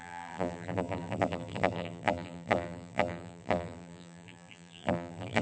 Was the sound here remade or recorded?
remade